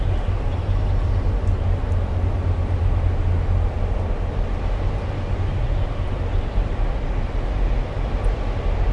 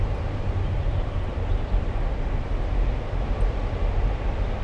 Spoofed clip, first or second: second